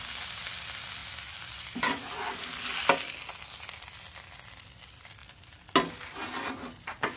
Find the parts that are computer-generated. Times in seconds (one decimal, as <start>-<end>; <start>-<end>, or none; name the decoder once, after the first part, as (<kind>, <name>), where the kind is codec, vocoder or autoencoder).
none